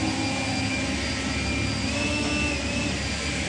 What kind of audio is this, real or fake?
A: real